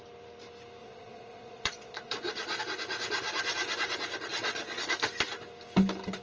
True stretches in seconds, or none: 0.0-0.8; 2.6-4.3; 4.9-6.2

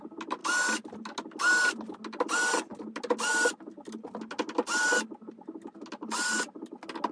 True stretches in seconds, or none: 0.0-7.1

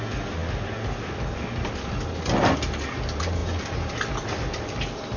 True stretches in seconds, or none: 0.0-5.2

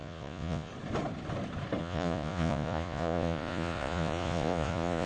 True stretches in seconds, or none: 0.7-1.8

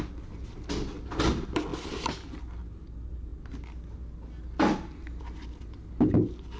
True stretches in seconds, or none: 0.0-6.6

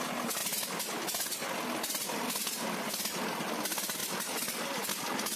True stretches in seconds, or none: 0.0-5.4

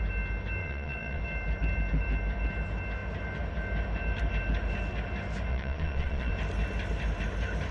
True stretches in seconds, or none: 0.0-0.6; 1.2-5.5; 6.3-7.7

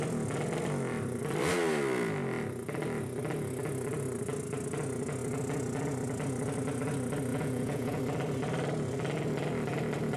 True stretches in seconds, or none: 0.0-7.3; 8.0-10.2